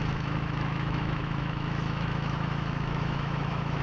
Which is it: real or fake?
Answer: fake